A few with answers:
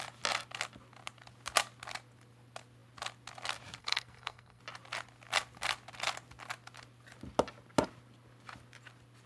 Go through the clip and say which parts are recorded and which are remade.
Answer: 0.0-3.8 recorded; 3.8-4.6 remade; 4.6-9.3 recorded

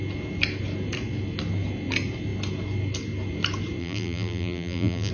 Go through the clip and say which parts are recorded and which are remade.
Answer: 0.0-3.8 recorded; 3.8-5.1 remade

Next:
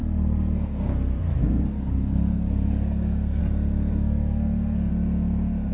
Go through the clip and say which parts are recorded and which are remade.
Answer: 0.0-3.4 remade; 3.4-3.9 recorded; 3.9-4.9 remade; 4.9-5.7 recorded